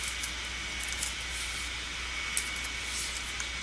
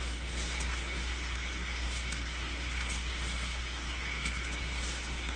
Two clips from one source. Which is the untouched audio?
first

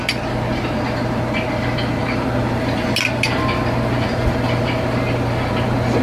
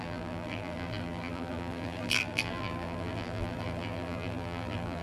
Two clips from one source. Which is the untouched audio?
first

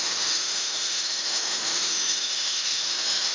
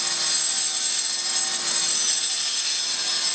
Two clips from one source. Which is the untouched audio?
second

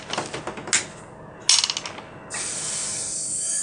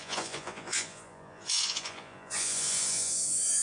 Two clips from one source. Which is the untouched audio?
first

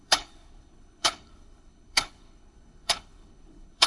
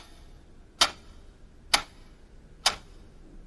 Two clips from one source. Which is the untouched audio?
second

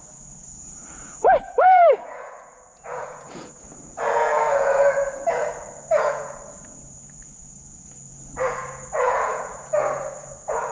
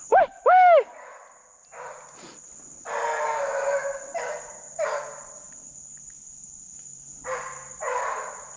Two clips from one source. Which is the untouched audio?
second